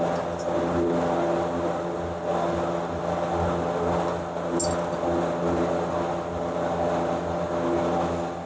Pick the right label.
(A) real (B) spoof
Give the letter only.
A